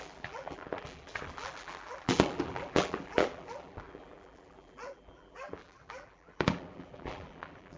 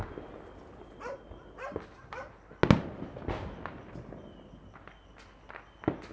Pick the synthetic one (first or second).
first